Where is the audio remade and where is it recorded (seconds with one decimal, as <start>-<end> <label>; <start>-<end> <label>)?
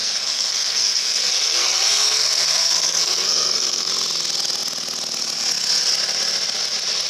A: 0.0-3.9 remade; 3.9-7.1 recorded